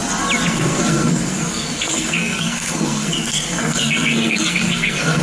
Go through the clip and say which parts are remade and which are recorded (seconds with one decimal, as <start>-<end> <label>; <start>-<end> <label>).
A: 0.0-0.5 recorded; 0.5-5.2 remade